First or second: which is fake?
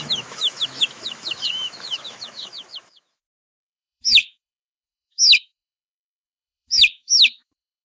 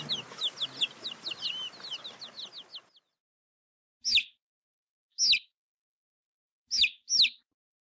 first